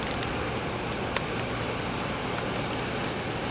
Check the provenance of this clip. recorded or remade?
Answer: recorded